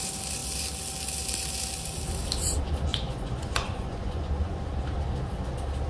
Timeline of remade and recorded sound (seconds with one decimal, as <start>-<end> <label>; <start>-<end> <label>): 0.0-2.9 recorded; 2.9-4.6 remade; 4.6-5.9 recorded